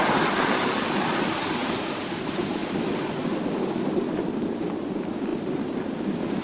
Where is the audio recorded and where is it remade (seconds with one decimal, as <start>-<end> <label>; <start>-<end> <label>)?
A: 0.0-6.4 recorded